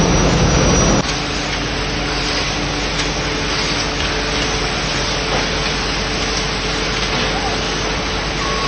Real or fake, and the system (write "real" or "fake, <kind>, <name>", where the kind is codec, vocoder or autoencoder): real